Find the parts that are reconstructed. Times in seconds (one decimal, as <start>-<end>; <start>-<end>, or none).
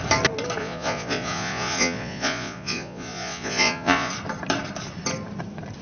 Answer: 0.6-4.1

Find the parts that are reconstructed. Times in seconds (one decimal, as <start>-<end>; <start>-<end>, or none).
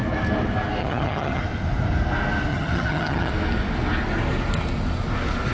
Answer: 0.8-1.4; 2.5-3.3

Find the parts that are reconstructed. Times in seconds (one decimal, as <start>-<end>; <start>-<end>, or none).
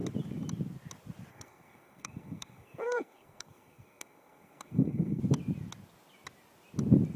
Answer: 1.3-5.2